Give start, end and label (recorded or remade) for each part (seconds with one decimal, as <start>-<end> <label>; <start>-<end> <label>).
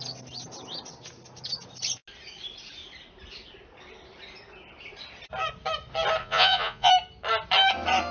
0.0-6.2 recorded; 6.2-6.9 remade; 6.9-8.1 recorded